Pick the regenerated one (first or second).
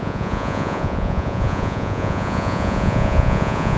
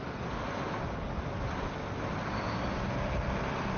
first